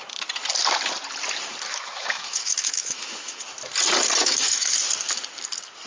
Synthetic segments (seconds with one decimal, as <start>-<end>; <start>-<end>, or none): 1.7-3.4; 4.2-4.7

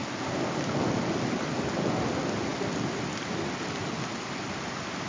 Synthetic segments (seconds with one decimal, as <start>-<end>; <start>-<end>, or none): none

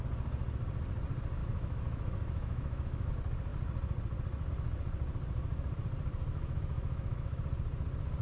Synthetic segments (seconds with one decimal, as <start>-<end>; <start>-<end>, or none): 1.4-3.1; 6.3-7.4

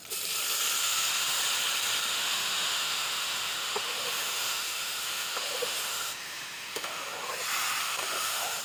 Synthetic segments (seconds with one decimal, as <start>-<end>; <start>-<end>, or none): 0.8-1.4; 2.1-7.3; 7.8-8.6

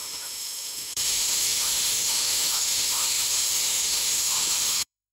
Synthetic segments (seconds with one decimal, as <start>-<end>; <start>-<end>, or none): 0.0-5.1

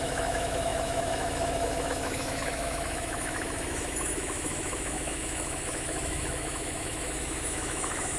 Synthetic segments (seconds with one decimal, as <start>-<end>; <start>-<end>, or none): 0.0-8.2